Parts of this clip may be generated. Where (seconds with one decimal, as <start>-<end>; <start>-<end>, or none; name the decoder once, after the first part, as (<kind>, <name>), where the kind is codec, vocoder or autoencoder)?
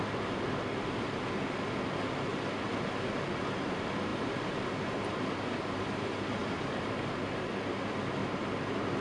4.1-5.2 (vocoder, BigVGAN v2); 6.4-7.1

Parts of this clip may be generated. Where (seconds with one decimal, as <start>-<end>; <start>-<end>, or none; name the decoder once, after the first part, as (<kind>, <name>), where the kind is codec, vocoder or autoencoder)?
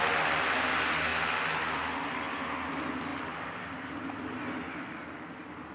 3.1-4.2 (vocoder, BigVGAN v2)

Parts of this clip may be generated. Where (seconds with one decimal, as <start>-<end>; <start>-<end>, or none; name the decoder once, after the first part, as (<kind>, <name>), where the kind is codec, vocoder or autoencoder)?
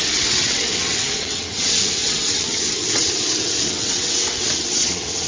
0.0-5.3 (vocoder, WaveNeXt)